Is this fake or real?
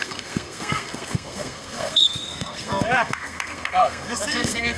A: fake